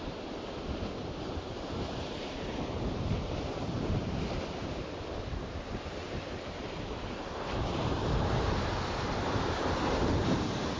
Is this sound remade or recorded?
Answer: remade